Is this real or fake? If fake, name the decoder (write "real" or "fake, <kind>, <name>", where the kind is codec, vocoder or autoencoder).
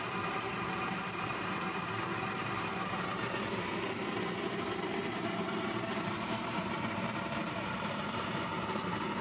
fake, vocoder, BigVGAN v2